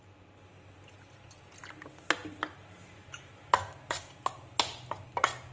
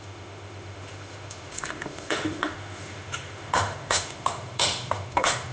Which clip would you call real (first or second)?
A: first